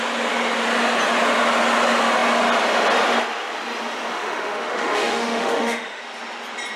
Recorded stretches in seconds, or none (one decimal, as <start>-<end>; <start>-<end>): 0.0-4.1; 6.0-6.8